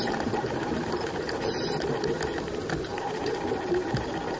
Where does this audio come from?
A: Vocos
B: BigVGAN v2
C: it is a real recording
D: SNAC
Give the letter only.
C